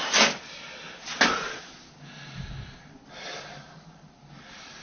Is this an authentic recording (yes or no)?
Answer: yes